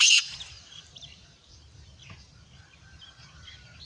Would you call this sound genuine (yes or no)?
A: no